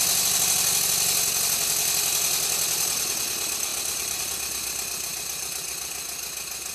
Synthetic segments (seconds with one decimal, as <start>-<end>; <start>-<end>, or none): 3.7-4.2